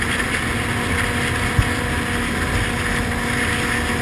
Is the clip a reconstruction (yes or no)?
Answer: no